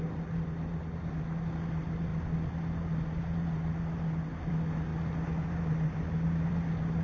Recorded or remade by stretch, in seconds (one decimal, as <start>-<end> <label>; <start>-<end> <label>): 0.0-7.0 recorded